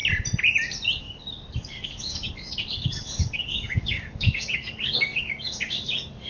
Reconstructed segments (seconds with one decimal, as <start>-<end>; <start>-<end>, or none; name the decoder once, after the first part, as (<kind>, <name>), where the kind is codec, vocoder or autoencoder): 1.0-6.3 (codec, DAC)